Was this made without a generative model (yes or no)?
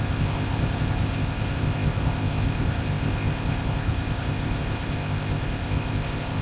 no